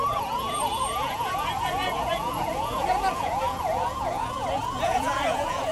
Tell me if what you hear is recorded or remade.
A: remade